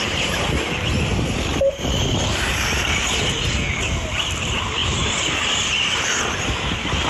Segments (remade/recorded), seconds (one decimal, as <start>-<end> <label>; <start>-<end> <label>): 0.0-1.5 recorded; 1.5-3.3 remade; 3.3-4.8 recorded; 4.8-6.2 remade; 6.2-7.1 recorded